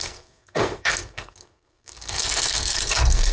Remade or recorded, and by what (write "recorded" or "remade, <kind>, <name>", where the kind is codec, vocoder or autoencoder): remade, codec, SNAC